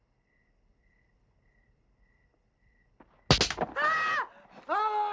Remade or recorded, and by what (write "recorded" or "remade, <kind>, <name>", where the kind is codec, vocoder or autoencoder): recorded